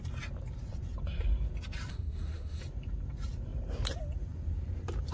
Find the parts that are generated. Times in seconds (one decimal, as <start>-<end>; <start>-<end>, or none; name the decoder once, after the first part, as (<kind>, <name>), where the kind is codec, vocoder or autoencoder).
1.9-2.6 (codec, SNAC)